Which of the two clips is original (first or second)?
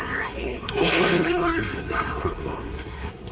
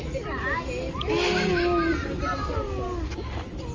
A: second